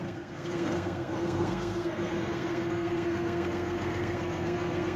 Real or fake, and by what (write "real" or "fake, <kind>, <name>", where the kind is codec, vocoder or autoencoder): fake, codec, SNAC